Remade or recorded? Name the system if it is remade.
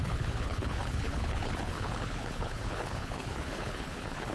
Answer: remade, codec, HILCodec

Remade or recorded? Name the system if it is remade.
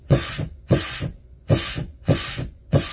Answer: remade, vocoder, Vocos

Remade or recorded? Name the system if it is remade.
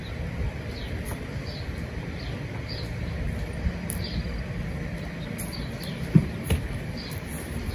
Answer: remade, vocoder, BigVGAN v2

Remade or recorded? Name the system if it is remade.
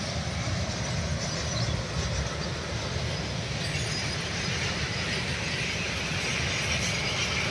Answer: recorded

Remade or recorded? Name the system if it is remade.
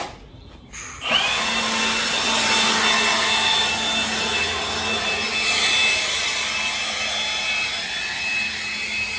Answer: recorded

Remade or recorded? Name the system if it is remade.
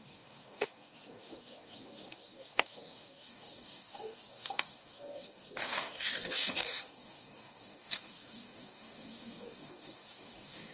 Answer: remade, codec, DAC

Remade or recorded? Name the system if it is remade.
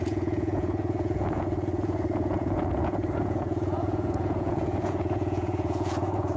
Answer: remade, vocoder, Vocos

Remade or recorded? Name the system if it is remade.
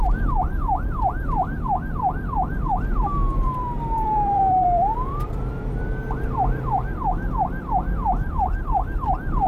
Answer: remade, vocoder, BigVGAN v2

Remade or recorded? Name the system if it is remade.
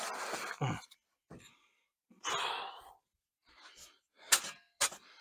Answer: recorded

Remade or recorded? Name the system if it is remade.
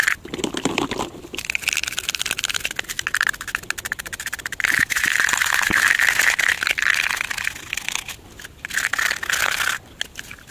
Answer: recorded